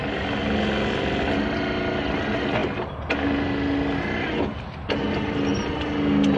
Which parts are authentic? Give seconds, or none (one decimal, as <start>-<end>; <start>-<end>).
0.0-6.4